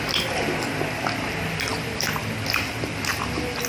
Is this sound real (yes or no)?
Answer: yes